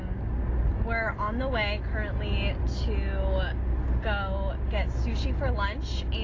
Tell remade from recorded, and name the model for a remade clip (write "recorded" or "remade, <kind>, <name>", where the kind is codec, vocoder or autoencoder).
recorded